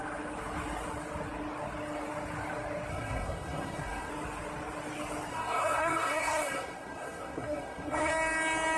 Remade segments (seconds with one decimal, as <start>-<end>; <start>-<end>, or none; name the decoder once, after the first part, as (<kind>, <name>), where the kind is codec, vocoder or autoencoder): 2.9-4.1 (codec, SNAC); 5.3-8.1